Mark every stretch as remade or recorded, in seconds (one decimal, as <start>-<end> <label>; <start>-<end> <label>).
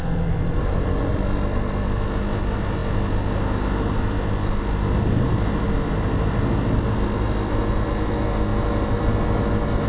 0.0-9.9 recorded